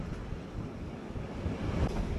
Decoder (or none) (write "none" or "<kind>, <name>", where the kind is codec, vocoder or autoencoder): none